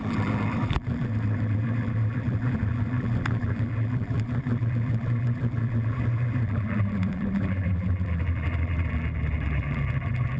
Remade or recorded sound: remade